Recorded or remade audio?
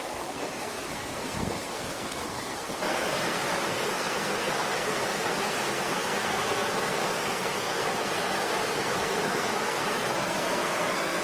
remade